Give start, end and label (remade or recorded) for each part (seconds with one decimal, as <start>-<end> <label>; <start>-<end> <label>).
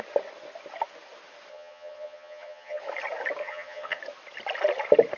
0.0-1.5 recorded; 1.5-2.8 remade; 2.8-3.4 recorded; 3.4-4.0 remade; 4.0-5.2 recorded